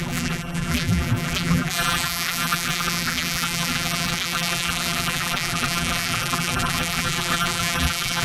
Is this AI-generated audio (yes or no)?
yes